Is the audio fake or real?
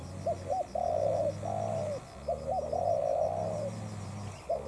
real